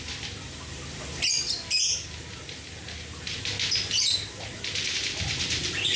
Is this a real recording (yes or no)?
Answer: yes